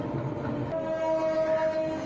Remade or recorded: recorded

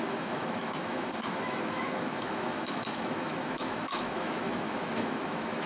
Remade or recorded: remade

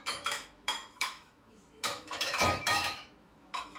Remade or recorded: remade